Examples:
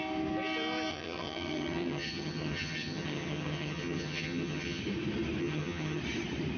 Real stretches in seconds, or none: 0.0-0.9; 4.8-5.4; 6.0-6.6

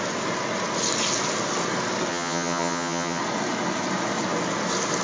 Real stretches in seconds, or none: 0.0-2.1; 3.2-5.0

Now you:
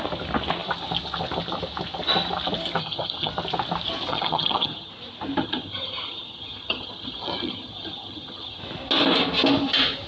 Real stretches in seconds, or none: 0.0-2.8; 3.3-4.1; 4.9-5.4; 8.6-10.1

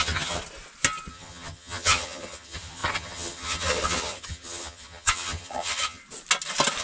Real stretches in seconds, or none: 0.4-1.1; 6.0-6.8

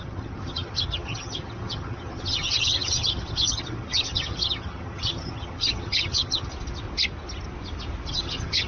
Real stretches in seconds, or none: 6.5-8.1

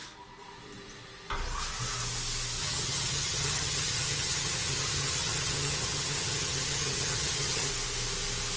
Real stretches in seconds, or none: 0.0-2.6; 7.7-8.6